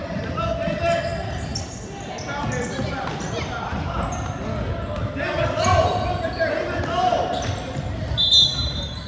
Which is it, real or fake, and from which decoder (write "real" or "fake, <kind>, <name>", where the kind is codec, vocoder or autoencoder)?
real